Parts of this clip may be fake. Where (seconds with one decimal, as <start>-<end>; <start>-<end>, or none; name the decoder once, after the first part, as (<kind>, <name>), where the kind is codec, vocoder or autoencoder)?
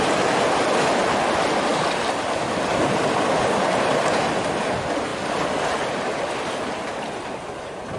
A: none